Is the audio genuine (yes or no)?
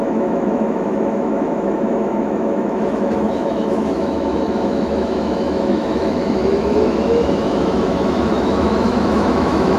no